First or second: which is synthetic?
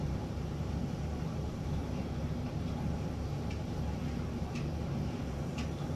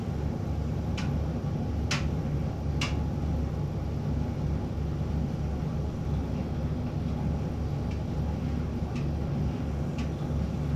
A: first